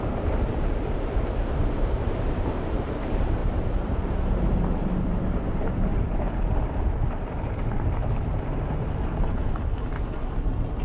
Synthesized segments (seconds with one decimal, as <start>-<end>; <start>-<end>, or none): 0.0-10.8